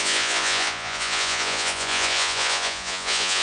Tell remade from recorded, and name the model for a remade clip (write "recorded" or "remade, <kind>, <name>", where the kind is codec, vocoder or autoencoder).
remade, vocoder, Vocos